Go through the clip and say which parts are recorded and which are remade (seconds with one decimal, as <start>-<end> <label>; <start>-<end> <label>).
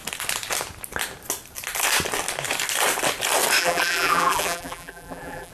0.0-3.6 recorded; 3.6-5.5 remade